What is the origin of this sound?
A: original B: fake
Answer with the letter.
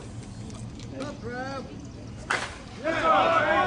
A